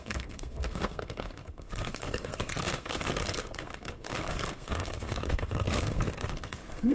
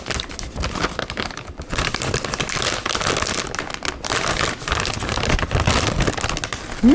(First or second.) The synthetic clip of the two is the first